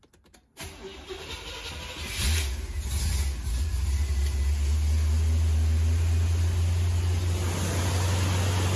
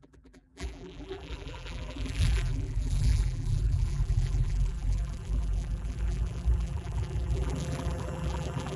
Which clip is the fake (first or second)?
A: second